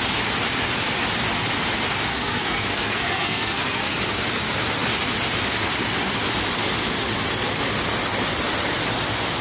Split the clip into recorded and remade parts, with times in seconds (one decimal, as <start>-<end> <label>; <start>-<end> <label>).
0.0-2.1 recorded; 2.1-3.9 remade; 3.9-9.4 recorded